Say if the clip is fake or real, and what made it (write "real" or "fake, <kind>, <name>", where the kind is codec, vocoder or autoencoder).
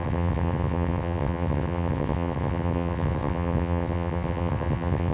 fake, vocoder, WaveNeXt